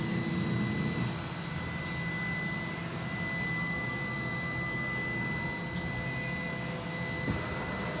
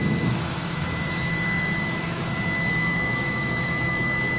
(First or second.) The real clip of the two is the first